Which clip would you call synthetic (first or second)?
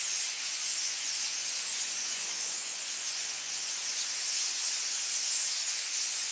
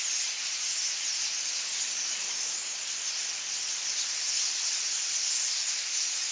first